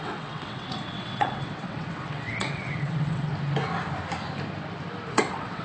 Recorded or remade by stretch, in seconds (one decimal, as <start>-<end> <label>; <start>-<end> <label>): 0.0-3.3 remade; 3.3-5.1 recorded; 5.1-5.6 remade